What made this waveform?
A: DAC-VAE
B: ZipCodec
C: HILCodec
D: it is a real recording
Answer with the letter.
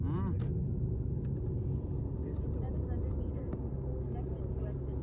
D